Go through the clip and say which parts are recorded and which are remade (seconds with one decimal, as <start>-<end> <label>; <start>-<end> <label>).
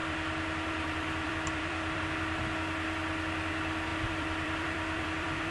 0.0-2.0 remade; 2.0-3.9 recorded; 3.9-5.5 remade